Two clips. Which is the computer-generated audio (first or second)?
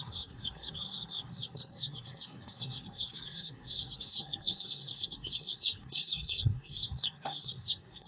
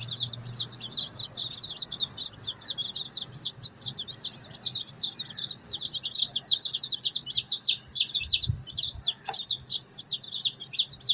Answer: first